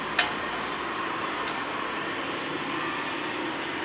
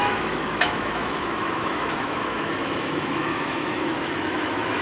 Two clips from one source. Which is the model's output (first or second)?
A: second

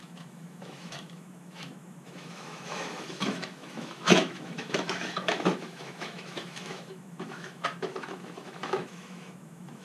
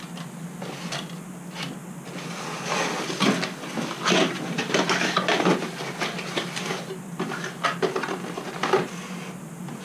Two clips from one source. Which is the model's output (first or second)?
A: first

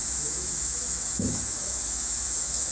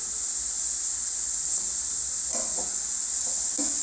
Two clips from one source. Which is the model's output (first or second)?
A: first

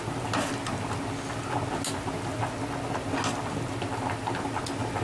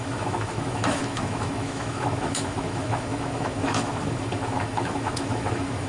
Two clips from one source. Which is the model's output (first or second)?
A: second